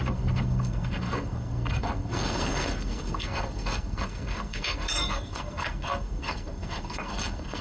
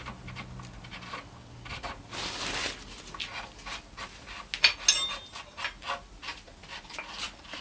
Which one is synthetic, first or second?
first